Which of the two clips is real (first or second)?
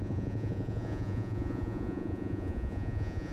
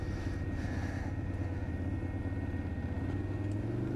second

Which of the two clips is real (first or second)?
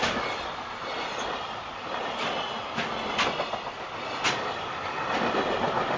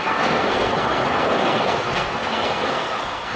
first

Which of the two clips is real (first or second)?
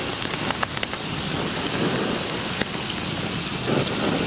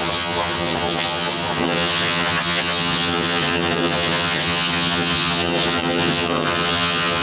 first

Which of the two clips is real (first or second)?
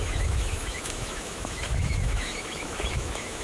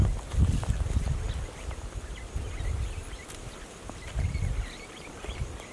second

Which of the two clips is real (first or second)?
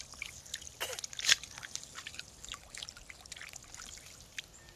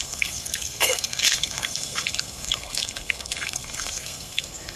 first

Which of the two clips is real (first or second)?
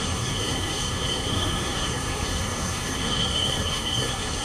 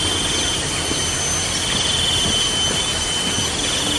second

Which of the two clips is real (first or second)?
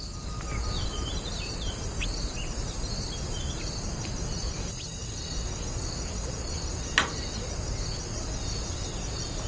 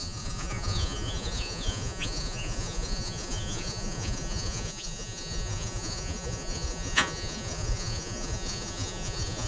first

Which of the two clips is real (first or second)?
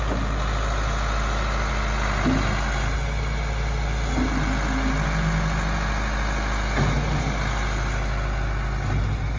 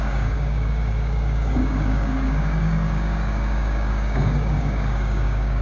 first